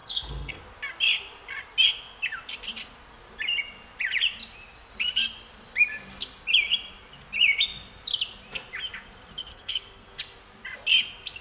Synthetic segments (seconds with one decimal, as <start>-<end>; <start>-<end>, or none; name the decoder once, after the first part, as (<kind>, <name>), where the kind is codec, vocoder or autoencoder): 0.0-0.6 (codec, SNAC); 9.5-10.2